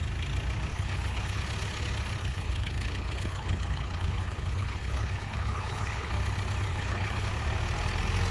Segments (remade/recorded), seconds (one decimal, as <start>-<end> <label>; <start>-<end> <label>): 0.0-0.7 recorded; 0.7-1.4 remade; 1.4-2.2 recorded; 2.2-6.1 remade; 6.1-6.7 recorded; 6.7-7.3 remade; 7.3-8.3 recorded